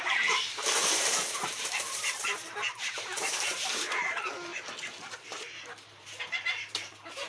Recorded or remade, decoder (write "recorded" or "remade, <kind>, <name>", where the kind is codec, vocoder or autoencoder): remade, vocoder, BigVGAN v2